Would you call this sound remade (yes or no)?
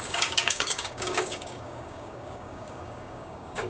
yes